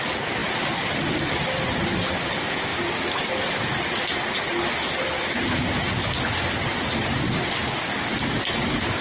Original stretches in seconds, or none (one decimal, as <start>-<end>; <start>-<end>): 0.0-7.6; 8.1-9.0